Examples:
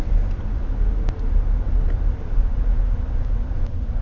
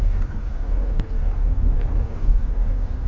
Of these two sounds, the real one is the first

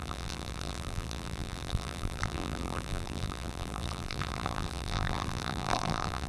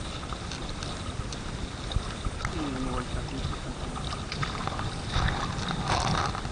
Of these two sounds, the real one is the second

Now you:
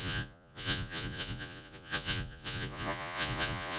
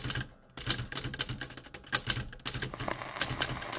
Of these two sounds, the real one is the second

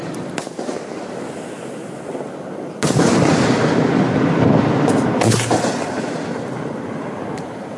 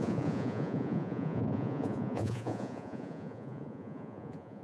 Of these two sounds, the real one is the first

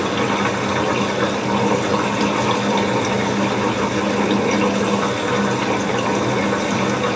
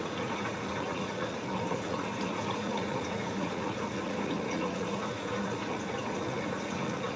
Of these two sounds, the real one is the first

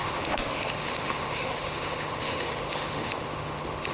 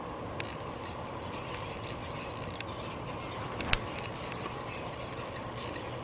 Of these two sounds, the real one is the second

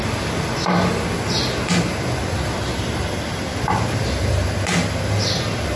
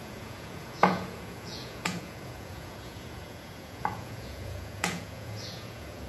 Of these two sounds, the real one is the first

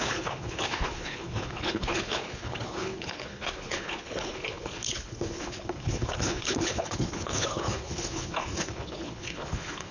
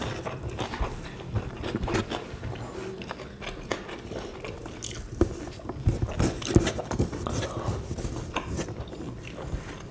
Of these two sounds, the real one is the second